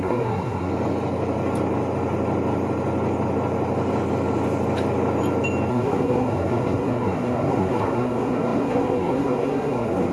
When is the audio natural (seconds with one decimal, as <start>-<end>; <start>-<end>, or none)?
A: 0.7-5.7